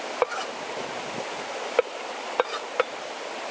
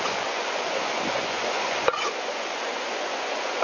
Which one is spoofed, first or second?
second